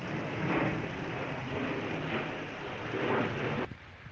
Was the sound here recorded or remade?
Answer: recorded